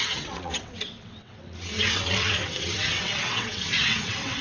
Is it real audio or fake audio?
fake